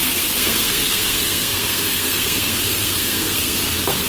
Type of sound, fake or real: fake